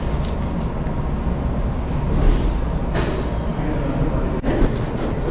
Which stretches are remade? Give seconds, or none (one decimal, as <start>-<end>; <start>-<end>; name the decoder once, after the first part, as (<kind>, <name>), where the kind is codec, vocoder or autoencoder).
none